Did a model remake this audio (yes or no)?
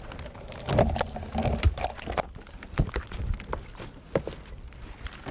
no